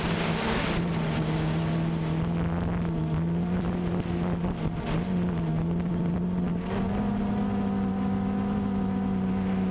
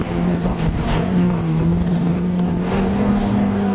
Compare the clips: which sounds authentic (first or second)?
first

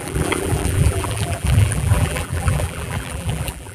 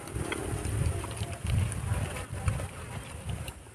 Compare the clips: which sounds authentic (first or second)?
second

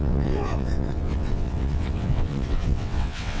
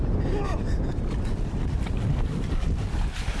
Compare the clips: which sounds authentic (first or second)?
second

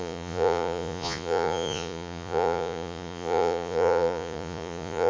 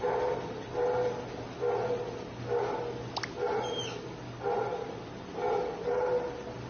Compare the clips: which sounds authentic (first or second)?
second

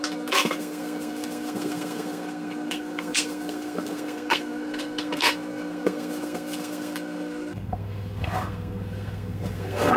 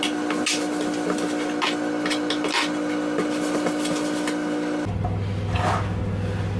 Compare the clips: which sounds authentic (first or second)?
second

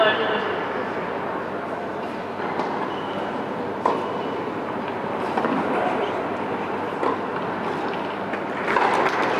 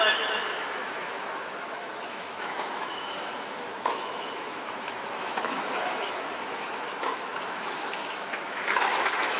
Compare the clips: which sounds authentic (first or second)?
first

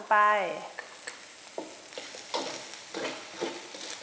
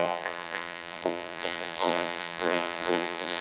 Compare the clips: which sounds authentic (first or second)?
first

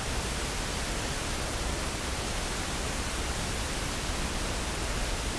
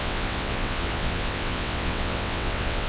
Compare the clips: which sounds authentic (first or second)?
first